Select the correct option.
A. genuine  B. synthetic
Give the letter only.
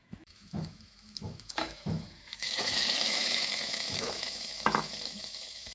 B